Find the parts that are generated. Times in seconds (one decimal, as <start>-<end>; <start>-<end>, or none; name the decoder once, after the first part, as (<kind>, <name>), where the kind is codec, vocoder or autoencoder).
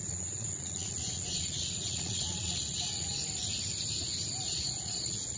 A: 0.0-3.2 (vocoder, Vocos); 4.5-5.4